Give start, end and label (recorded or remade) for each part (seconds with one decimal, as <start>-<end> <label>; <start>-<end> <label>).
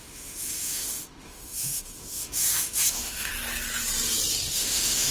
0.0-3.3 remade; 3.3-4.5 recorded; 4.5-5.1 remade